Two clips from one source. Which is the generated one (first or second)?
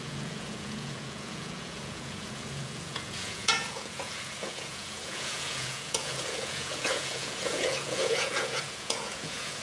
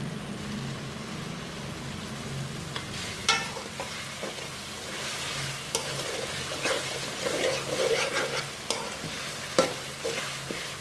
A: first